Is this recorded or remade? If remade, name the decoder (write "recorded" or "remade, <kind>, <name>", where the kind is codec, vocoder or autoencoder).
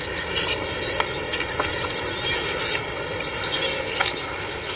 recorded